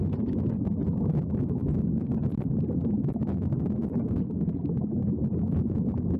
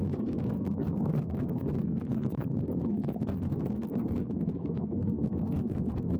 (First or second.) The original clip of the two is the first